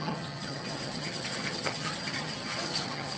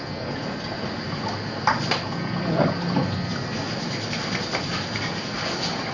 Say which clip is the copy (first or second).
first